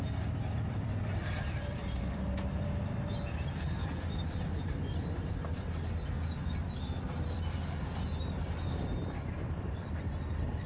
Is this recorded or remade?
remade